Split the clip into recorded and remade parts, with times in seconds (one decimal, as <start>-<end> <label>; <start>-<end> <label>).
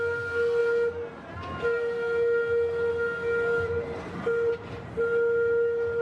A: 0.0-6.0 recorded